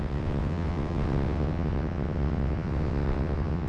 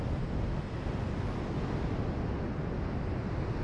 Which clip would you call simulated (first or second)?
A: first